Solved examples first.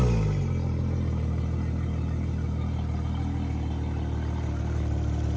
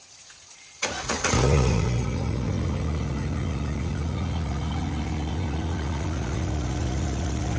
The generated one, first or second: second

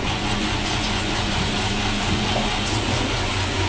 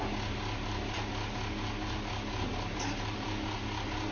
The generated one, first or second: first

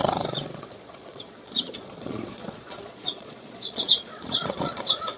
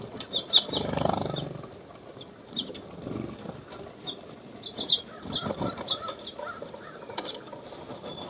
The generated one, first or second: first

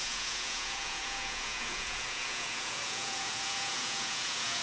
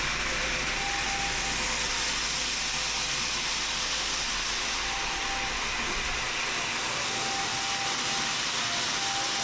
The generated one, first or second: first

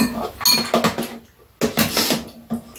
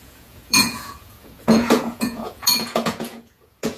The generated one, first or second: second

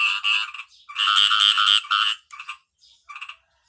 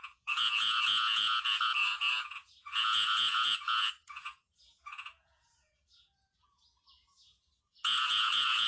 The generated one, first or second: second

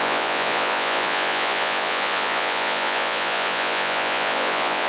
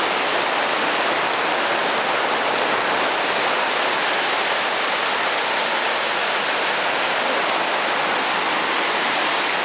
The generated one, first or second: first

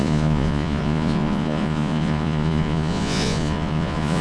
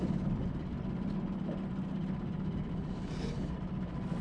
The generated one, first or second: first